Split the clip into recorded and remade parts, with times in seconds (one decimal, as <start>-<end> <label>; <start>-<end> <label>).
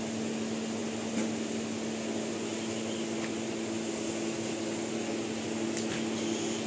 0.0-6.7 recorded